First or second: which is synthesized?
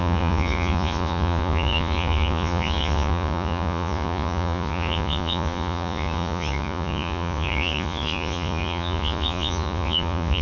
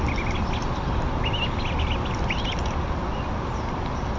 first